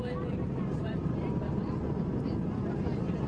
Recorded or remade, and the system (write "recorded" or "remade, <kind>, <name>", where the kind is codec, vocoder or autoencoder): remade, vocoder, BigVGAN v2